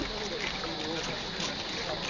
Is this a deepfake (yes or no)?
no